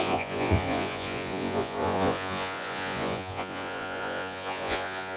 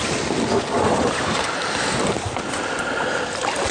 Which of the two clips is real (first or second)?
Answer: second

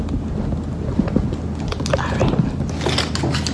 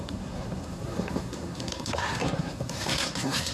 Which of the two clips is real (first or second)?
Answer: first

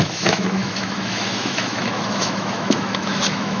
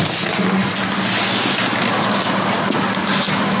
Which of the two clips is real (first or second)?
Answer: second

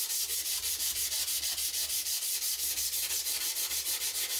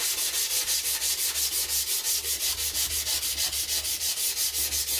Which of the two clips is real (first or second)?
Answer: second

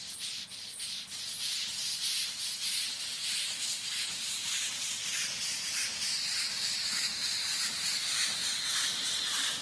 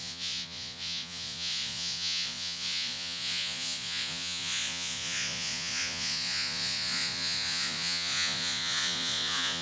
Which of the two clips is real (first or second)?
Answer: first